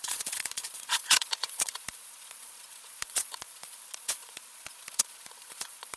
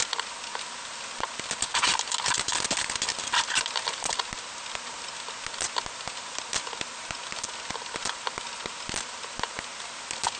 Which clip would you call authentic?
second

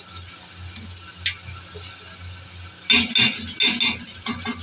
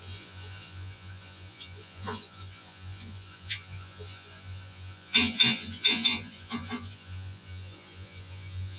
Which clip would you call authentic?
first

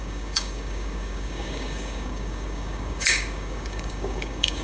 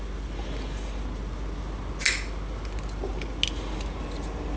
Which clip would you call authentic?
second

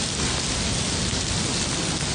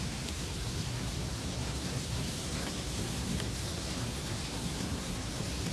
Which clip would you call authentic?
first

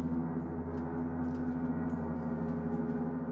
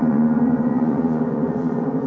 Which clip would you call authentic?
first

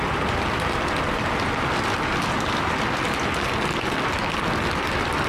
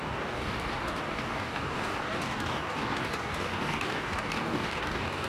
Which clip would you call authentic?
first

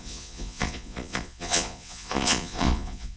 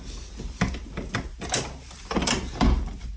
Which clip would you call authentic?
second